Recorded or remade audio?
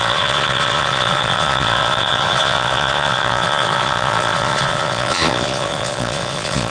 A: remade